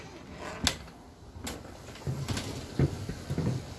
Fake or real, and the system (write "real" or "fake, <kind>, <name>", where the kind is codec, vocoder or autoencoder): real